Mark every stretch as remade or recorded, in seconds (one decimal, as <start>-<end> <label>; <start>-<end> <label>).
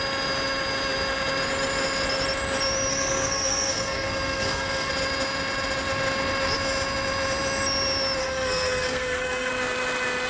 0.0-2.9 recorded; 2.9-4.9 remade; 4.9-8.2 recorded; 8.2-9.5 remade; 9.5-10.3 recorded